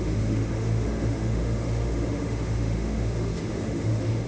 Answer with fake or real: fake